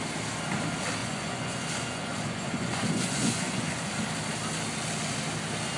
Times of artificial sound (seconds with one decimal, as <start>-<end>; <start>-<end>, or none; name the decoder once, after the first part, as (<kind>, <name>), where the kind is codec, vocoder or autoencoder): 1.0-3.9 (vocoder, Vocos)